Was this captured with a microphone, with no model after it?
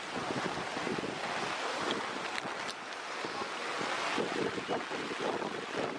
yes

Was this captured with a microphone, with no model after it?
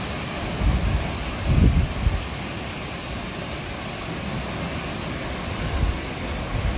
yes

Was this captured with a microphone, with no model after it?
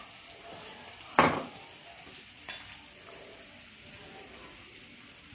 yes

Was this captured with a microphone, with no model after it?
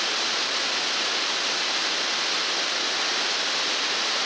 yes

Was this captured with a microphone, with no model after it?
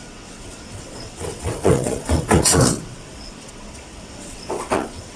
no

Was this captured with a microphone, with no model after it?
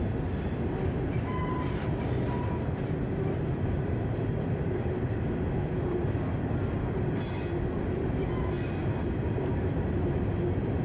yes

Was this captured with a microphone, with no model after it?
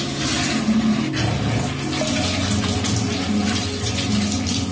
yes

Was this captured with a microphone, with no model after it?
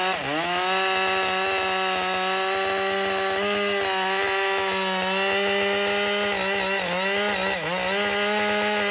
yes